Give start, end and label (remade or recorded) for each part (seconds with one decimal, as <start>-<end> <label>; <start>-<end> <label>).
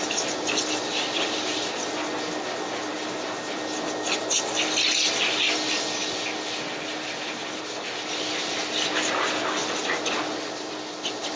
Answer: 0.0-11.4 recorded